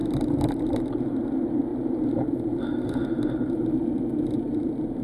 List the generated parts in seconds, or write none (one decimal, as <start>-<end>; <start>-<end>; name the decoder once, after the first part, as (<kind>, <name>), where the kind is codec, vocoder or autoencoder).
0.0-1.2 (vocoder, BigVGAN v2); 1.7-5.0